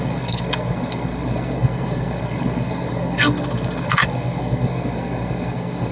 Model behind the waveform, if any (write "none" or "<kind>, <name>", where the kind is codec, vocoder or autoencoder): codec, SNAC